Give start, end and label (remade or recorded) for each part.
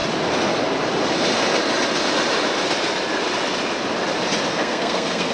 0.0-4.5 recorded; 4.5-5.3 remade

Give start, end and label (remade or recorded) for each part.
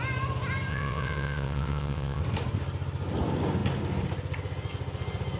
0.0-0.7 recorded; 0.7-2.2 remade; 2.2-5.4 recorded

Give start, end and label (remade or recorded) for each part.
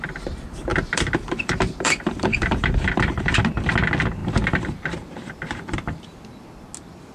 0.0-0.7 recorded; 0.7-3.4 remade; 3.4-4.2 recorded; 4.2-5.9 remade; 5.9-7.1 recorded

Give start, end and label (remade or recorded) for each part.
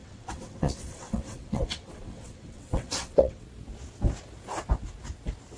0.0-3.4 remade; 3.4-5.6 recorded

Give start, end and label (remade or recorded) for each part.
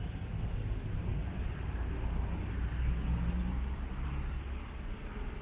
0.0-5.4 recorded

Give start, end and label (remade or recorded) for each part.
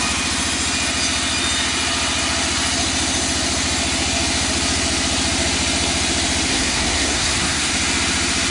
0.0-6.5 recorded; 6.5-7.7 remade; 7.7-8.5 recorded